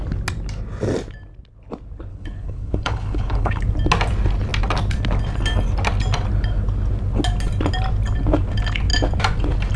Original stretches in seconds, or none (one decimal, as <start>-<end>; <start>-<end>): 0.0-2.1; 3.6-9.8